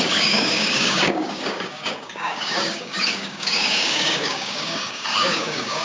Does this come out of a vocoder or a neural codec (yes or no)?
yes